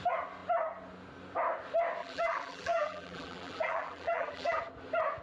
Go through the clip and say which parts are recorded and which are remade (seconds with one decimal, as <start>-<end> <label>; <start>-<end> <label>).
0.0-2.0 recorded; 2.0-4.6 remade; 4.6-5.2 recorded